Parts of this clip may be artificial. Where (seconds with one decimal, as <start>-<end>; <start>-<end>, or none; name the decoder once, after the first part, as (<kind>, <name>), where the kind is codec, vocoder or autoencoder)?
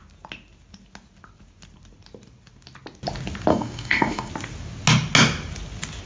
3.5-4.3 (codec, DAC)